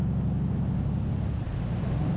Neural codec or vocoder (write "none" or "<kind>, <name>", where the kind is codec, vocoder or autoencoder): none